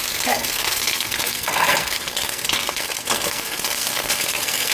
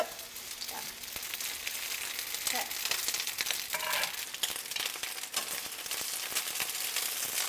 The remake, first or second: first